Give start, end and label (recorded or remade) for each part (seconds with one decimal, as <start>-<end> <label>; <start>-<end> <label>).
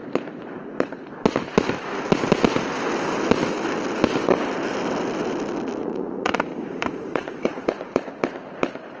0.0-5.8 recorded; 5.8-8.1 remade; 8.1-9.0 recorded